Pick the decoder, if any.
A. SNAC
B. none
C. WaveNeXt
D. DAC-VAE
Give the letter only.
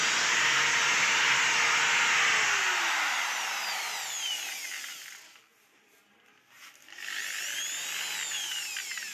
B